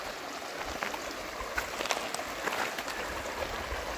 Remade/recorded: recorded